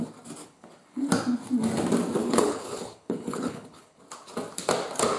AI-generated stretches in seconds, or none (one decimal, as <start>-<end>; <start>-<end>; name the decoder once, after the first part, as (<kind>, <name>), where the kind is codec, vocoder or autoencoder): 0.4-1.1 (codec, HILCodec); 2.2-4.0